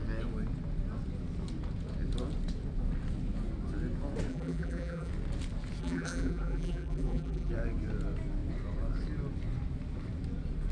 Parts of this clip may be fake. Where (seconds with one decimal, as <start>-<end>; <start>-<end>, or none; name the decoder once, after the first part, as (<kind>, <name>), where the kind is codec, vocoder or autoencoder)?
4.3-5.1 (vocoder, BigVGAN v2); 5.8-7.5